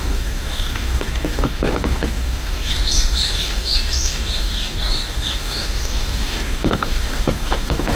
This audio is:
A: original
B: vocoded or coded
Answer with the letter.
B